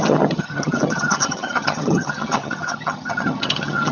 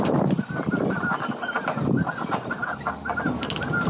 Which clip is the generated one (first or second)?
first